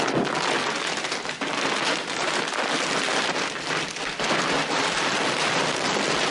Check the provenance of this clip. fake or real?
real